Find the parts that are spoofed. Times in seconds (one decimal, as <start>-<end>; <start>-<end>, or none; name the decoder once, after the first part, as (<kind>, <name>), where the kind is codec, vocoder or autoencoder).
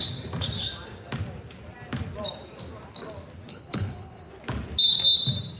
3.5-4.3 (codec, HILCodec)